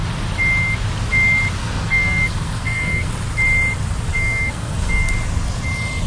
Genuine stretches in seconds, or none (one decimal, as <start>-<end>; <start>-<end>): 0.0-1.6; 3.1-4.1; 5.1-6.1